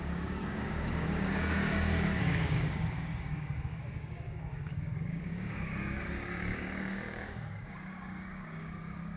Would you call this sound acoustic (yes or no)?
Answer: no